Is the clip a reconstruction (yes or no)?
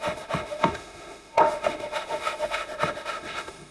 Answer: yes